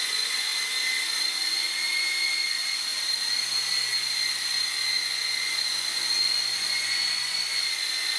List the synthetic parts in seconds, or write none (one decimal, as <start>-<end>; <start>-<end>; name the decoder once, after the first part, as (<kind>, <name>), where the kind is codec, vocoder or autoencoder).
0.0-0.5 (vocoder, Vocos); 1.3-2.9; 4.9-8.2